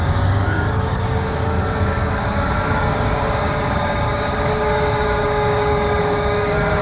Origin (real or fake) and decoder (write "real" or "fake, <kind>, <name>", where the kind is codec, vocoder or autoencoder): fake, codec, DAC